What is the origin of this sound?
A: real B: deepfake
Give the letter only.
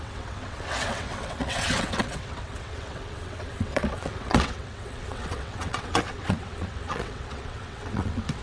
B